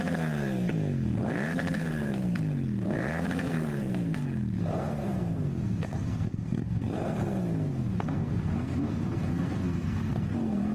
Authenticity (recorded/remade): remade